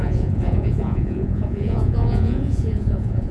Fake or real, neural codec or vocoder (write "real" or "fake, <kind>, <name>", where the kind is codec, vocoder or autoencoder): fake, vocoder, Vocos